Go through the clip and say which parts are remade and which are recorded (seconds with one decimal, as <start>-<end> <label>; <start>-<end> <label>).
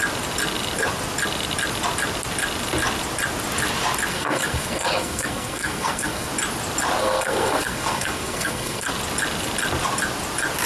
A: 0.0-4.1 recorded; 4.1-6.3 remade; 6.3-7.0 recorded; 7.0-8.9 remade; 8.9-10.7 recorded